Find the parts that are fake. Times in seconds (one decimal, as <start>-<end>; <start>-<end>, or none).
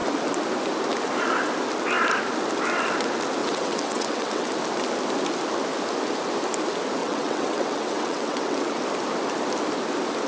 3.4-4.5; 7.0-8.8